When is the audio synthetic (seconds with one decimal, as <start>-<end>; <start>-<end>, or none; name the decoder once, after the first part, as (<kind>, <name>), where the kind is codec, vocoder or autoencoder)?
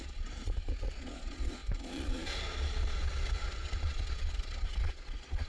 0.0-5.5 (vocoder, Vocos)